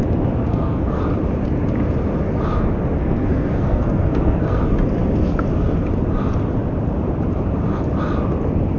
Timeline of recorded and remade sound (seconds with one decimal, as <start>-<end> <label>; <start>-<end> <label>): 0.0-0.4 recorded; 0.4-1.0 remade; 1.0-3.0 recorded; 3.0-4.6 remade; 4.6-8.8 recorded